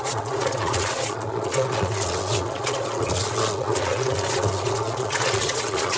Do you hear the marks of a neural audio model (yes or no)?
yes